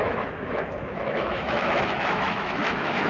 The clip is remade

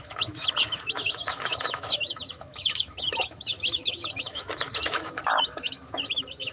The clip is remade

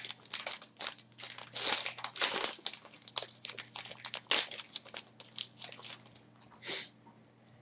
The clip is recorded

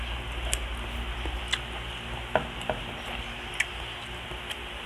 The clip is recorded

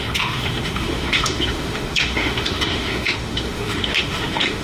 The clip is remade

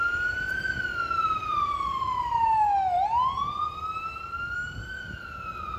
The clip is recorded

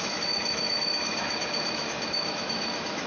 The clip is remade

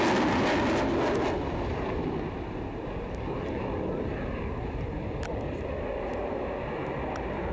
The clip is recorded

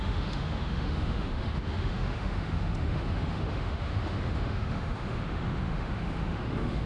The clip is remade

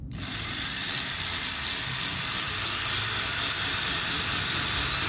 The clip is recorded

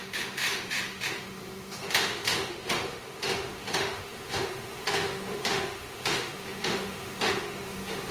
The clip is remade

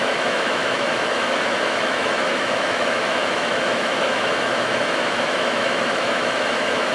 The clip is remade